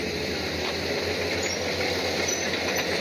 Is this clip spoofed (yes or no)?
no